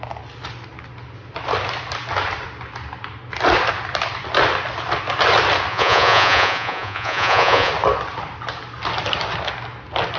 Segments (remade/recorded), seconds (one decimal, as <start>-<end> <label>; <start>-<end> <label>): 0.0-5.7 recorded; 5.7-7.7 remade; 7.7-10.2 recorded